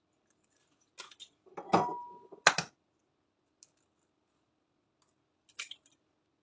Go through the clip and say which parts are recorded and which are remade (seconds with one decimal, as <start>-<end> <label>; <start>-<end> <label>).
0.0-6.4 recorded